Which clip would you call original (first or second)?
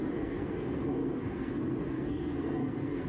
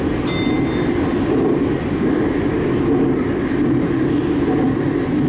second